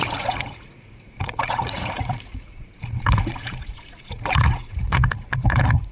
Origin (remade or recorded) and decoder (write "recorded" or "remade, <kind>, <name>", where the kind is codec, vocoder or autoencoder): remade, vocoder, Vocos